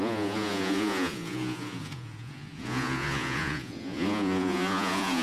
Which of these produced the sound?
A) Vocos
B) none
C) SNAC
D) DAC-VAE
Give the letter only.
A